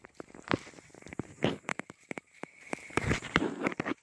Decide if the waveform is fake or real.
fake